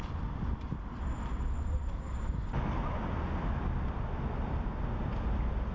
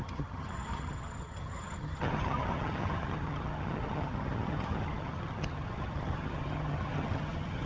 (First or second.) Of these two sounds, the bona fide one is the first